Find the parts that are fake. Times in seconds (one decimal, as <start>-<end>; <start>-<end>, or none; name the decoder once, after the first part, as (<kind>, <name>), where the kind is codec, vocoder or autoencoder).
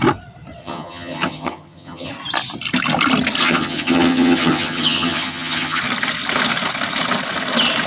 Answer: 0.6-2.1 (vocoder, HiFi-GAN); 3.4-5.8